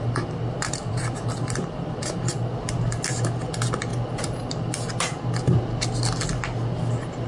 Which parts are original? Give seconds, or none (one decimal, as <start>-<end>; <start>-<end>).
0.0-0.8; 2.8-3.9; 4.9-7.3